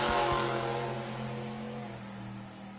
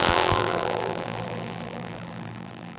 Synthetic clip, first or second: second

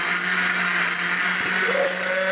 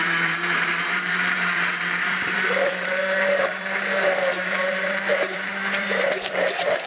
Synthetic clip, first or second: second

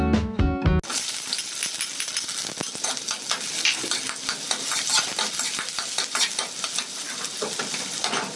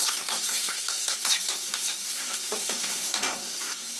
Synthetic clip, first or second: second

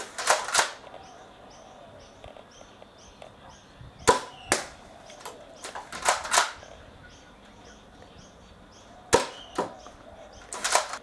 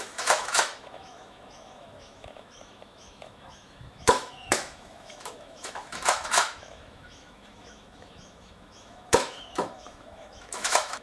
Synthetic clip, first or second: second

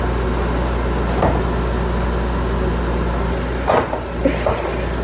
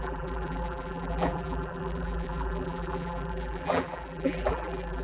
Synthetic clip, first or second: second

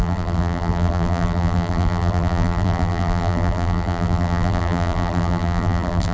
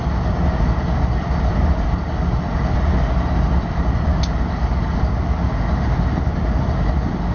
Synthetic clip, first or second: first